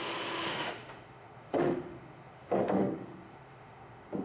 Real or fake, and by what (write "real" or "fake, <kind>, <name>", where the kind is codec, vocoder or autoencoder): fake, autoencoder, DAC-VAE